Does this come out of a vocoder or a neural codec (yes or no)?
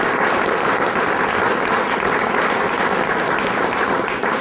no